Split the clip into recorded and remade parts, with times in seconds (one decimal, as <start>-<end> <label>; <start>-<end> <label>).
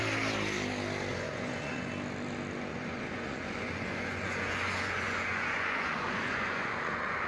0.0-1.1 recorded; 1.1-1.9 remade; 1.9-2.7 recorded; 2.7-7.3 remade